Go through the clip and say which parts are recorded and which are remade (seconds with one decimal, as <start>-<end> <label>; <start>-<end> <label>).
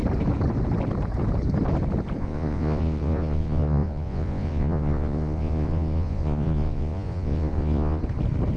0.0-2.2 recorded; 2.2-8.0 remade; 8.0-8.6 recorded